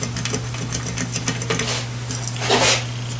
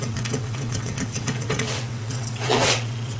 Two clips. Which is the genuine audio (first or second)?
first